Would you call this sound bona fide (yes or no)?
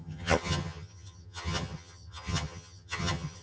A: no